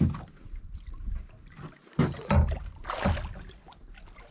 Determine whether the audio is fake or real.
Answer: real